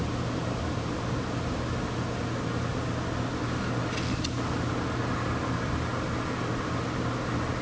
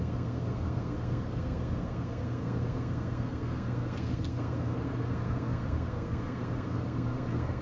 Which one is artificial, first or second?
second